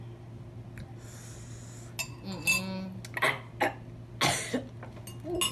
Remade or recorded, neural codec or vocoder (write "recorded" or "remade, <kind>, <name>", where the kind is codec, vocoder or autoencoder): recorded